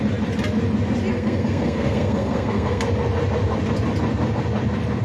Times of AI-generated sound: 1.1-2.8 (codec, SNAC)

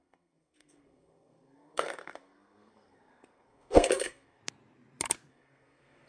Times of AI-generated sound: 0.0-4.4 (codec, SNAC); 5.3-6.1

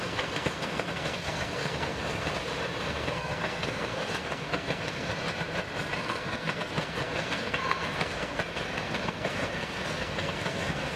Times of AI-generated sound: 0.0-2.3 (codec, SNAC); 2.8-5.1; 6.0-11.0

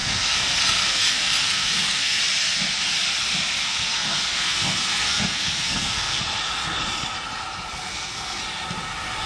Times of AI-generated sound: 0.0-2.2 (codec, SNAC); 3.6-6.2; 7.7-8.4

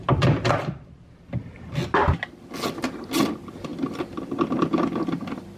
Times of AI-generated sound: none

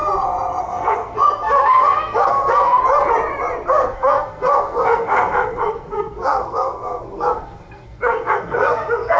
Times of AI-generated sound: 0.6-2.8 (codec, SNAC); 3.7-9.2

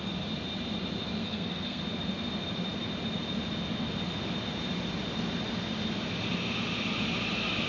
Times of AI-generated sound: 1.2-1.8 (codec, SNAC)